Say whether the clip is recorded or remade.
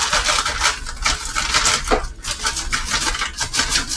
recorded